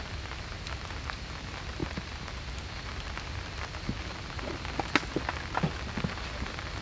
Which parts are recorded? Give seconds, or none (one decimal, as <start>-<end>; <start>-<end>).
0.0-6.8